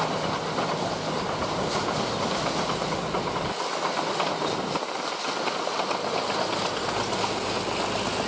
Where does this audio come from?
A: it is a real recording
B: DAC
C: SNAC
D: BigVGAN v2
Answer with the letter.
A